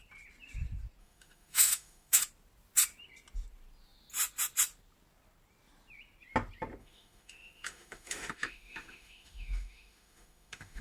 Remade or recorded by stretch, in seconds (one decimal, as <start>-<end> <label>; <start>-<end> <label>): 0.0-1.0 recorded; 1.0-2.2 remade; 2.2-6.8 recorded; 6.8-10.8 remade

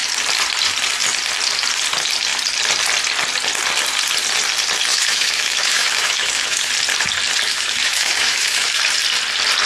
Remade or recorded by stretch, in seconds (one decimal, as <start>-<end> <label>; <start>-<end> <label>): 0.0-4.9 recorded; 4.9-6.7 remade; 6.7-7.5 recorded; 7.5-8.8 remade; 8.8-9.7 recorded

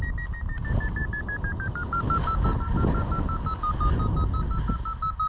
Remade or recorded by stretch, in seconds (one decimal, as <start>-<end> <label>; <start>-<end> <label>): 0.0-5.3 recorded

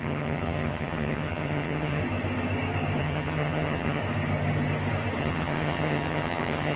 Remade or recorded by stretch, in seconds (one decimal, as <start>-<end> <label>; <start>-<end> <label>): 0.0-2.0 remade; 2.0-3.0 recorded; 3.0-4.0 remade; 4.0-5.2 recorded; 5.2-6.8 remade

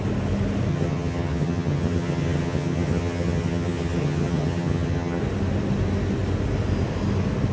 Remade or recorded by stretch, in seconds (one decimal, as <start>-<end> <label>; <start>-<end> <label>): 0.0-0.7 recorded; 0.7-5.2 remade; 5.2-7.5 recorded

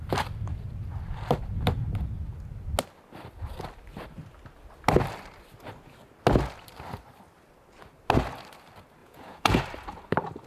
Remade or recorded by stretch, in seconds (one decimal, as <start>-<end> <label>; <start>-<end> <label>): 0.0-9.0 recorded; 9.0-9.6 remade; 9.6-10.5 recorded

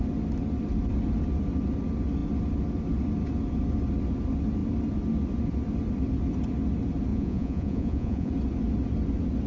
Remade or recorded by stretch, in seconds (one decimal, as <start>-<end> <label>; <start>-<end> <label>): 0.0-7.1 recorded; 7.1-8.3 remade; 8.3-9.5 recorded